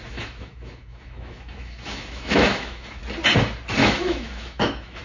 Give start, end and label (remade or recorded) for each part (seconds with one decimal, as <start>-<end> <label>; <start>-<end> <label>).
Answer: 0.0-3.0 remade; 3.0-3.8 recorded; 3.8-5.0 remade